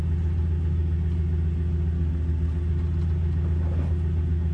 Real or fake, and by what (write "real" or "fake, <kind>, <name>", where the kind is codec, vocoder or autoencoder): real